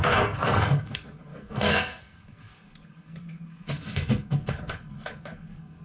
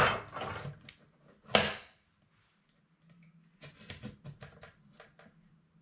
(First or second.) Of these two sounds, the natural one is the second